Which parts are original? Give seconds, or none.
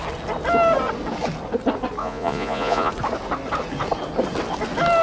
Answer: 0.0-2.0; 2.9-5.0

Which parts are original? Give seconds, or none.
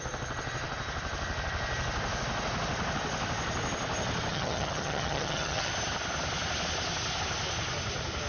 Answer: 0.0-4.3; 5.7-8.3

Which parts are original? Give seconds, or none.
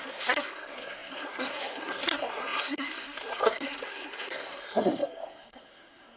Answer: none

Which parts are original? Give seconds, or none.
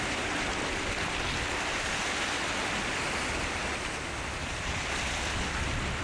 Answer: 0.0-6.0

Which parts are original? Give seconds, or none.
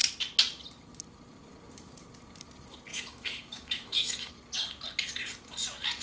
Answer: 0.0-2.9; 4.3-6.0